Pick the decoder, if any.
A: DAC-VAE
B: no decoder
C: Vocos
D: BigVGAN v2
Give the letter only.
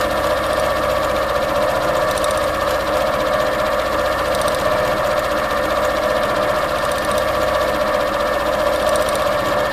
B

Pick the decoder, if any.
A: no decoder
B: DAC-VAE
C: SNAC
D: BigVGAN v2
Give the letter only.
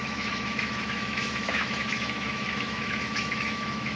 B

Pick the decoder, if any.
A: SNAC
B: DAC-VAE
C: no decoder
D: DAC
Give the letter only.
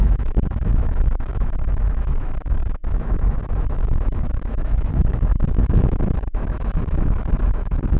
B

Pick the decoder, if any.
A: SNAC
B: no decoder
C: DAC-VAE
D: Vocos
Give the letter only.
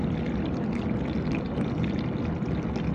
B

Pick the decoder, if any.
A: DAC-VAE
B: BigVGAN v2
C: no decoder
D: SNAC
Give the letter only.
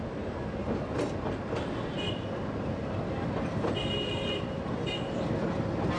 C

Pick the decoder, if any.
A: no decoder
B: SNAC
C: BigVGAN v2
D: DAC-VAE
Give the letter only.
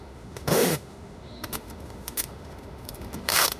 D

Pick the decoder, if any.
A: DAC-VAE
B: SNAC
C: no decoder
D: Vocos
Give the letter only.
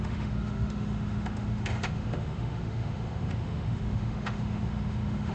A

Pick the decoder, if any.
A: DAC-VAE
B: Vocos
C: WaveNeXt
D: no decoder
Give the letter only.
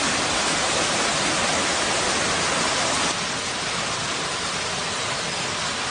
D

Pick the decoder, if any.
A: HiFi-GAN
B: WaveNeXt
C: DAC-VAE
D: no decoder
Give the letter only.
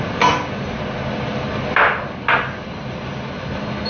D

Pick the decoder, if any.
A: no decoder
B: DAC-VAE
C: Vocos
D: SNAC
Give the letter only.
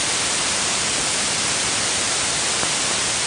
A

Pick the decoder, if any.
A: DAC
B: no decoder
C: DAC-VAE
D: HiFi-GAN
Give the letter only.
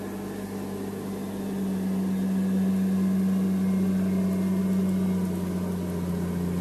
B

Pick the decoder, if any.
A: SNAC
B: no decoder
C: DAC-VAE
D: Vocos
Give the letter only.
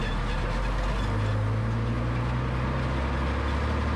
B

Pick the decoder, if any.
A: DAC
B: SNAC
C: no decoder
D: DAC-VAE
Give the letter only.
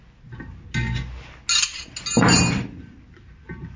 C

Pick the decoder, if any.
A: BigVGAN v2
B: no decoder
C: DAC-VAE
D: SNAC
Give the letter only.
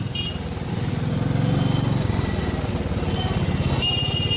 B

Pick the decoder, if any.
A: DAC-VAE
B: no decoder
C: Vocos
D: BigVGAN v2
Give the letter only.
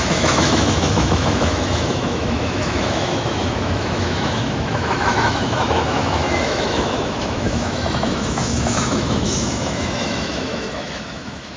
A